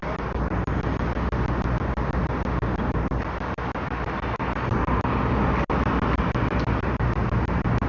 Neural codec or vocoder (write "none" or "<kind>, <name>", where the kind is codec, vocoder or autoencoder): none